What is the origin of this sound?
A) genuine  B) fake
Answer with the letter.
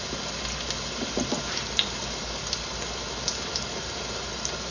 A